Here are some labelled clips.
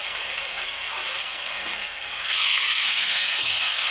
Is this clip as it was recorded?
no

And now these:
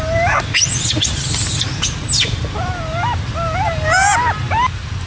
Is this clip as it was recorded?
yes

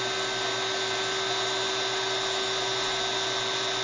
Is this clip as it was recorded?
yes